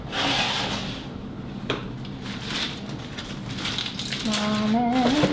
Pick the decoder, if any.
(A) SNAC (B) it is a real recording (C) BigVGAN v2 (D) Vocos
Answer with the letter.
B